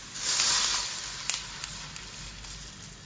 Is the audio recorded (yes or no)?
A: yes